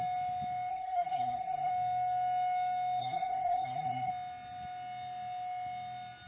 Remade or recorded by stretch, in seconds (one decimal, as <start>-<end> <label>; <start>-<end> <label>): 0.0-0.7 recorded; 0.7-1.7 remade; 1.7-3.0 recorded; 3.0-4.1 remade; 4.1-6.3 recorded